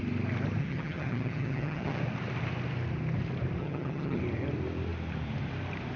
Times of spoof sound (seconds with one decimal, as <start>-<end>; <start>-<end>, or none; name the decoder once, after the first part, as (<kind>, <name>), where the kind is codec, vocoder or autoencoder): 0.6-2.0 (vocoder, HiFi-GAN); 3.6-4.2